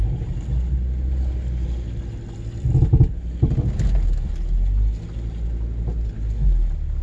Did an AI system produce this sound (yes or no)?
no